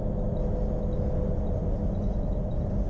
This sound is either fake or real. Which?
real